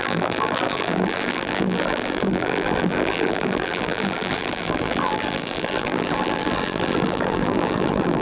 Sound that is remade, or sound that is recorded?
remade